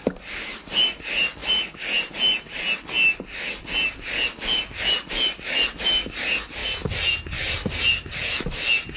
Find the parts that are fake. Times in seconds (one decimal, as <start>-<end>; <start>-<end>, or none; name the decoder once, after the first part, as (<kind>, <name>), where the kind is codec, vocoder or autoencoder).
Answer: none